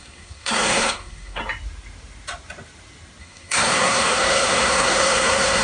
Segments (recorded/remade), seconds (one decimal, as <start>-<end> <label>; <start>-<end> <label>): 0.0-1.4 remade; 1.4-3.2 recorded; 3.2-5.6 remade